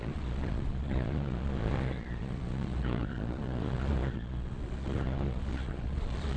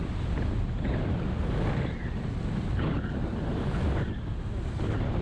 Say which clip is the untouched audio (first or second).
second